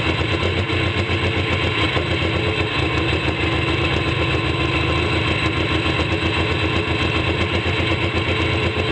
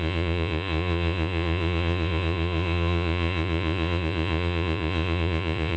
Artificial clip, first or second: second